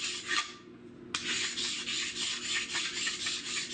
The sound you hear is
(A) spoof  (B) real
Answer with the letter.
B